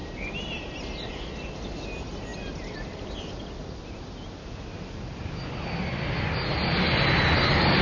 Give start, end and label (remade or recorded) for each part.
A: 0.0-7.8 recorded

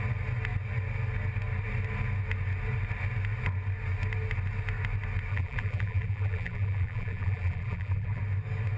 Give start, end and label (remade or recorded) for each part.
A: 0.0-5.3 recorded; 5.3-8.2 remade; 8.2-8.8 recorded